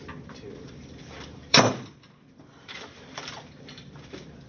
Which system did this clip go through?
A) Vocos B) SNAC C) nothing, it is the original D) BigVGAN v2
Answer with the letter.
D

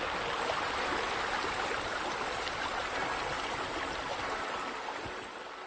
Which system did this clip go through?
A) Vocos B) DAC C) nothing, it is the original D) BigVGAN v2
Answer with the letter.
C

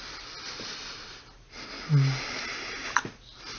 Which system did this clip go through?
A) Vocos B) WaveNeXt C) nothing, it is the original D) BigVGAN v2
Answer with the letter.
C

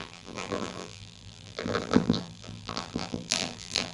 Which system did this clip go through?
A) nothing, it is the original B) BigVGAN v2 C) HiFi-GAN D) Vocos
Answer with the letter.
B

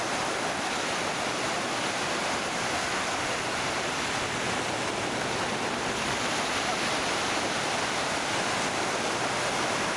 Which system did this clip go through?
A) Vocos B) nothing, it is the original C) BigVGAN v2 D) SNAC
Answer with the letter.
C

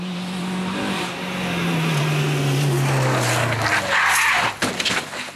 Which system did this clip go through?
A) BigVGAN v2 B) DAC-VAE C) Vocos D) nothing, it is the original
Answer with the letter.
D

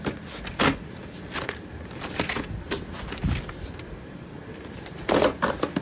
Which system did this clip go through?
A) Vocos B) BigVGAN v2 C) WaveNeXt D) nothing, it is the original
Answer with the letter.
D